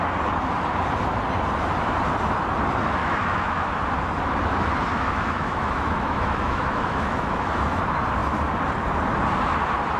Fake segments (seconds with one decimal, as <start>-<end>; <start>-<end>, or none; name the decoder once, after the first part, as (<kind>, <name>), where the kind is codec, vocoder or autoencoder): 3.0-3.7 (autoencoder, DAC-VAE); 4.9-7.8